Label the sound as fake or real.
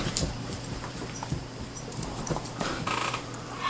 fake